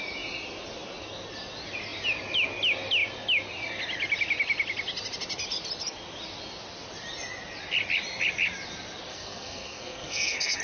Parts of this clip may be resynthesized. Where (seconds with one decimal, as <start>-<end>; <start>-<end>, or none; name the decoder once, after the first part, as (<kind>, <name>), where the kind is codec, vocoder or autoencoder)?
9.1-10.6 (codec, SNAC)